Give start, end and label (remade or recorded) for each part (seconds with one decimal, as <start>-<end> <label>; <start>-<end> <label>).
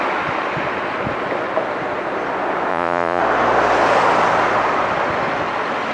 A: 0.0-2.7 recorded; 2.7-3.2 remade; 3.2-5.9 recorded